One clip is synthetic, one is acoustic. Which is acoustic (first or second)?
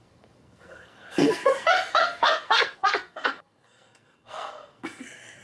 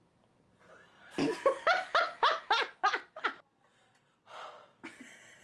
second